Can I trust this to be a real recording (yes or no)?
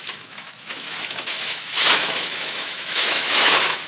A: no